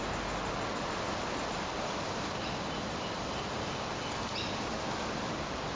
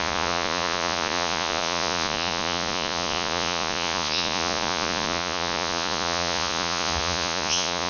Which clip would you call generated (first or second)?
second